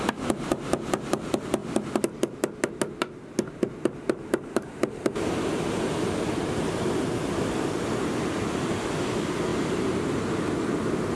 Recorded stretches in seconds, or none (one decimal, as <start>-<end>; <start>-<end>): 0.0-11.2

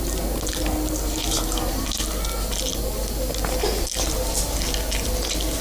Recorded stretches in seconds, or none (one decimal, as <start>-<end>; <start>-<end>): 0.0-1.2; 1.8-5.6

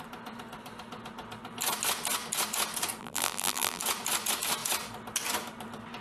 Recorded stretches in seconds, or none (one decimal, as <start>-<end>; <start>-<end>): 0.0-3.0; 3.8-6.0

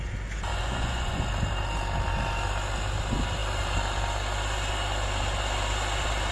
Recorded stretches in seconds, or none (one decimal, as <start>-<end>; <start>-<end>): 0.0-0.5; 1.2-6.3

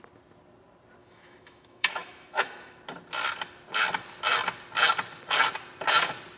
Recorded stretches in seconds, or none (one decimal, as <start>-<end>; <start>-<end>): 0.0-1.0; 2.8-6.4

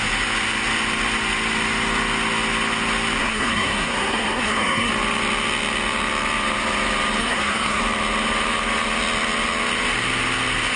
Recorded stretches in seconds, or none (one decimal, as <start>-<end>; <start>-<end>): 0.0-3.2; 4.9-7.2; 7.8-10.8

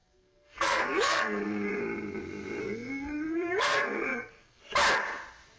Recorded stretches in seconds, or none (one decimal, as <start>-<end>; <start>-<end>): 1.8-2.6; 4.6-5.6